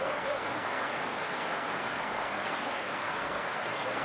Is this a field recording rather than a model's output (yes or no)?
no